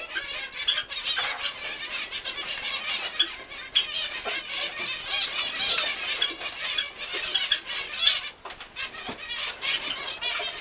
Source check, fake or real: real